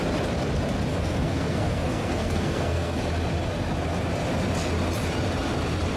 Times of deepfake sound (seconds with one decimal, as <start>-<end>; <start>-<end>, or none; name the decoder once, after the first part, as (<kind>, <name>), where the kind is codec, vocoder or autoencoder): 0.9-3.0 (codec, SNAC)